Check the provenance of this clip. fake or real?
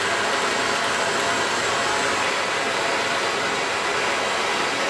real